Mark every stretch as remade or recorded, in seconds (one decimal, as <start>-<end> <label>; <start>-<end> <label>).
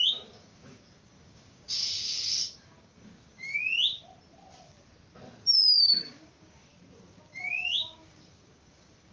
0.0-3.5 remade; 3.5-5.8 recorded; 5.8-6.7 remade; 6.7-7.5 recorded; 7.5-9.1 remade